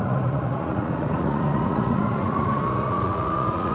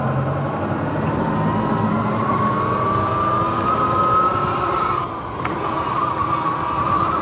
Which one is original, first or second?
second